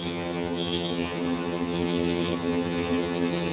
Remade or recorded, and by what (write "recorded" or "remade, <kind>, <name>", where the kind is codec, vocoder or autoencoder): remade, vocoder, HiFi-GAN